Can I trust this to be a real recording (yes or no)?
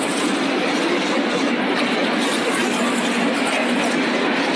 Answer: yes